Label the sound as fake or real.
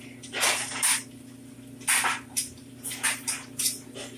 real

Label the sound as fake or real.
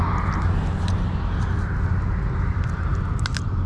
real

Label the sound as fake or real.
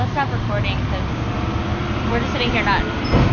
real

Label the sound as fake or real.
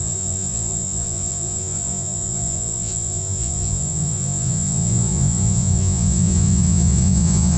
fake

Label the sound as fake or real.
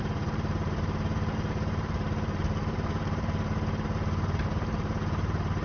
fake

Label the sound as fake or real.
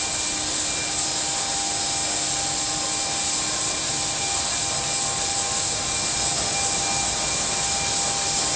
real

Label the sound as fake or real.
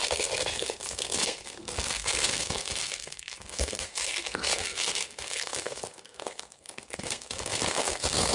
fake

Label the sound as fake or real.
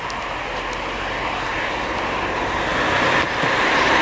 real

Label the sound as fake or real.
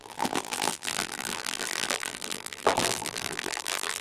fake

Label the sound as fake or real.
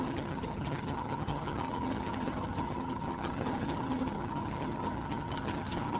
fake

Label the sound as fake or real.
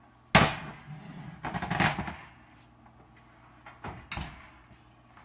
real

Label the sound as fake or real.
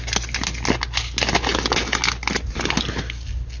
real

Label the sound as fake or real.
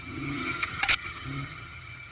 fake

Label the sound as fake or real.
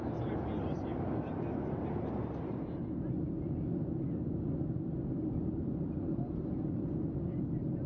real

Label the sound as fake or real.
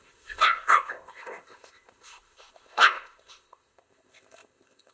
fake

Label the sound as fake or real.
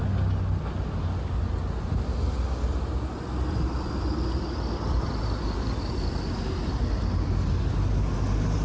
real